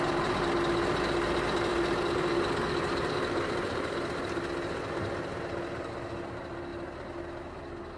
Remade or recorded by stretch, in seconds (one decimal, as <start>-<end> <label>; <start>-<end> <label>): 0.0-1.7 recorded; 1.7-2.3 remade; 2.3-2.9 recorded; 2.9-4.2 remade; 4.2-8.0 recorded

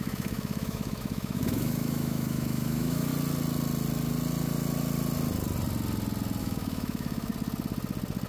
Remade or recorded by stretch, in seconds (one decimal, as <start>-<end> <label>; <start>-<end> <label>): 0.0-3.1 remade; 3.1-6.4 recorded; 6.4-7.3 remade; 7.3-8.3 recorded

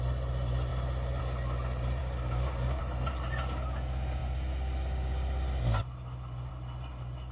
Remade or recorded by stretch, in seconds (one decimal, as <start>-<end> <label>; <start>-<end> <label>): 0.0-2.0 recorded; 2.0-2.8 remade; 2.8-7.3 recorded

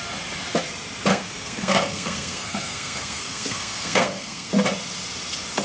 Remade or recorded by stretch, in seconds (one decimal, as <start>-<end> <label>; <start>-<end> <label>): 0.0-1.1 recorded; 1.1-4.5 remade; 4.5-5.6 recorded

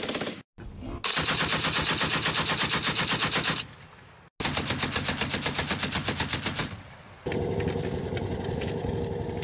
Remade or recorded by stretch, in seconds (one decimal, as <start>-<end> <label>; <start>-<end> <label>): 0.0-9.4 recorded

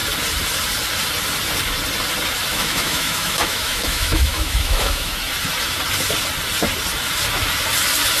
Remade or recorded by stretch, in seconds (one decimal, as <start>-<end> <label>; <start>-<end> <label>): 0.0-2.5 recorded; 2.5-5.1 remade; 5.1-8.2 recorded